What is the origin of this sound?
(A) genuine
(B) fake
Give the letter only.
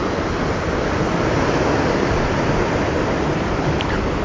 A